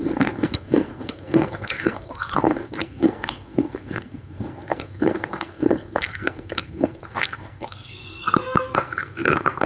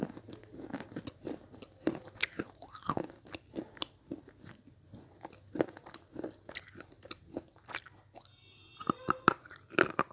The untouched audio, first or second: second